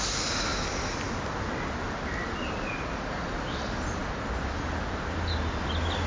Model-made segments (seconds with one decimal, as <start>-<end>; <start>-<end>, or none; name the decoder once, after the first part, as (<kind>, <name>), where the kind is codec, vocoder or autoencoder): none